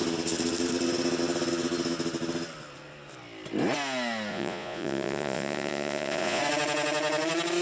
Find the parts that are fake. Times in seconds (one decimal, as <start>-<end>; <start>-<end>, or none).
4.3-6.4